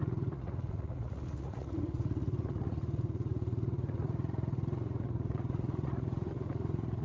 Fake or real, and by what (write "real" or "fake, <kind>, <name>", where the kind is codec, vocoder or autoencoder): fake, vocoder, Vocos